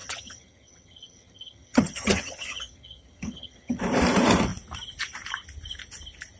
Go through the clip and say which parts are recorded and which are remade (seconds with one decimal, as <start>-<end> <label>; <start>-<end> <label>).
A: 0.0-3.8 remade; 3.8-6.4 recorded